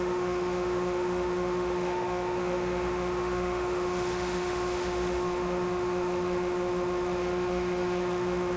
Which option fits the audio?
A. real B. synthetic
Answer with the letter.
B